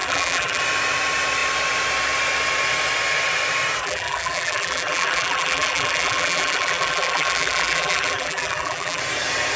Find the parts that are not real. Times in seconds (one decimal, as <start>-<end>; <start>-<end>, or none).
0.0-0.6; 3.8-9.0